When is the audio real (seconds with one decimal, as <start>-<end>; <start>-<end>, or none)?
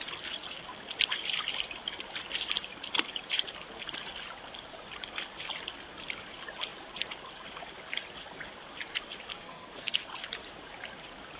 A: 0.0-9.3; 10.1-11.4